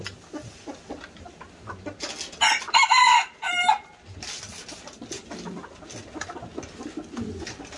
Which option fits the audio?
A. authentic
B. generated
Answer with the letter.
A